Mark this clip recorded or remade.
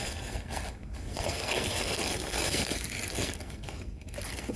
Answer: remade